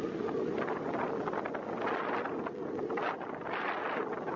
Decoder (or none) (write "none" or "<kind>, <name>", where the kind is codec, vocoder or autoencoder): none